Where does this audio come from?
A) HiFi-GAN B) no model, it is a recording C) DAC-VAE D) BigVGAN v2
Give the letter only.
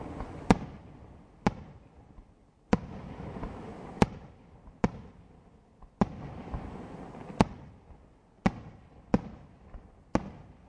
B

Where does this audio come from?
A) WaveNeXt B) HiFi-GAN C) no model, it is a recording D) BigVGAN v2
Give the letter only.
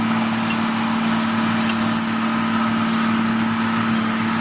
C